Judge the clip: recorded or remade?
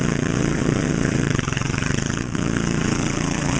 remade